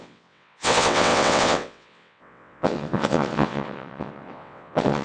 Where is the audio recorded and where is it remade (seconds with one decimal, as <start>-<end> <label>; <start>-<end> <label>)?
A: 0.0-5.0 remade